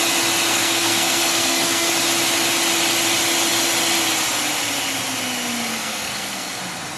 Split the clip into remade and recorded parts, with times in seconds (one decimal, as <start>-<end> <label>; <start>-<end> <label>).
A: 0.0-0.5 recorded; 0.5-1.9 remade; 1.9-5.7 recorded; 5.7-6.6 remade; 6.6-7.0 recorded